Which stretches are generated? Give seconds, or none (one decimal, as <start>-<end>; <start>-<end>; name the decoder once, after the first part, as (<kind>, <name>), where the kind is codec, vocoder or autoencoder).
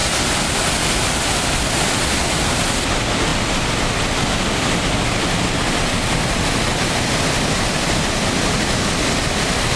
none